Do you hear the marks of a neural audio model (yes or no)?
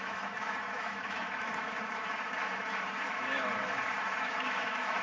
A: yes